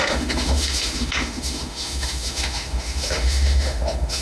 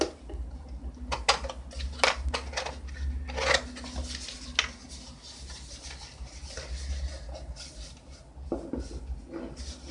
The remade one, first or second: first